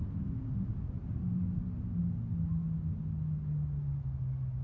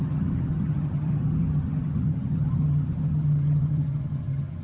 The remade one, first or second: second